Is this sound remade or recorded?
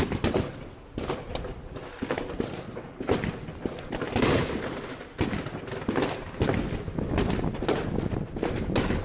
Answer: recorded